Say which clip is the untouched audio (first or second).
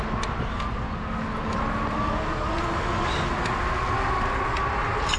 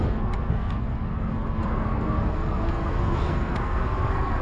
first